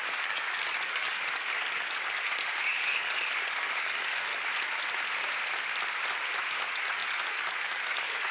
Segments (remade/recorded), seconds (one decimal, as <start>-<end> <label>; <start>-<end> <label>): 0.0-4.3 remade; 4.3-6.5 recorded; 6.5-8.3 remade